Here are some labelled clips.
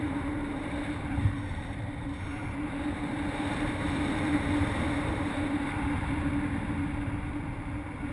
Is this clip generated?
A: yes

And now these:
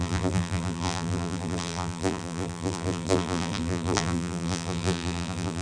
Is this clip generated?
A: yes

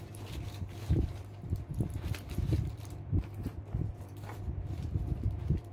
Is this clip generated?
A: yes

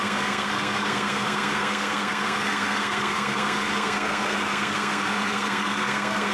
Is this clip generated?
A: yes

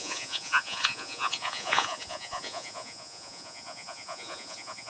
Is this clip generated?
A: yes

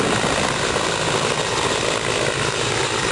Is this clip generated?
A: no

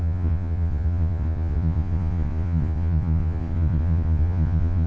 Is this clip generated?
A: yes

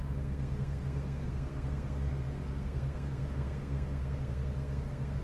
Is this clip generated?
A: yes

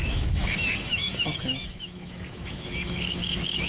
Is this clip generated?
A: yes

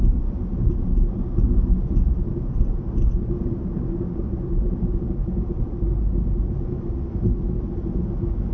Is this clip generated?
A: no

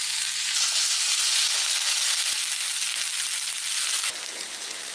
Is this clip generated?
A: no